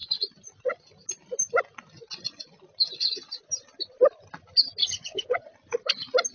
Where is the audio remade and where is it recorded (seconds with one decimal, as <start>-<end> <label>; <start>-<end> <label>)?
0.0-4.8 recorded; 4.8-5.4 remade; 5.4-6.3 recorded